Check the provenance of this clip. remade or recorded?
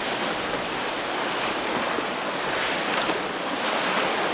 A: recorded